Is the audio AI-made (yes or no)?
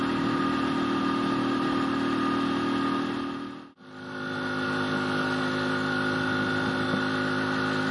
no